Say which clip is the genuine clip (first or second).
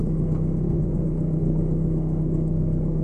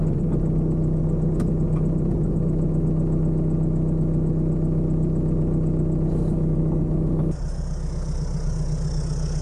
second